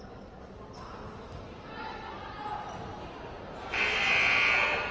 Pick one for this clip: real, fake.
real